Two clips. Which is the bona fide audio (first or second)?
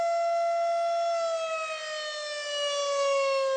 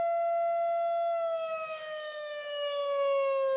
first